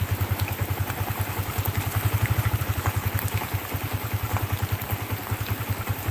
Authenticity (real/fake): real